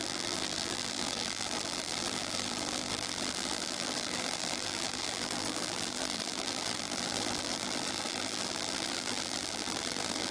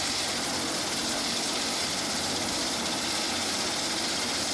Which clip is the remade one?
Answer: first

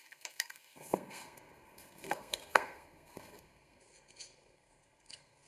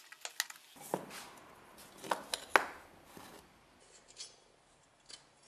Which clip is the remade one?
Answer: first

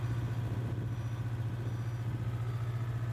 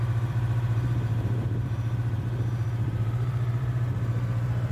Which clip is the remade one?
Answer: second